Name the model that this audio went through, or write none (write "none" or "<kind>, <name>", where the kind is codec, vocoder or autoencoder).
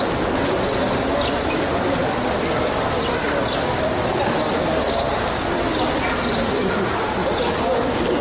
none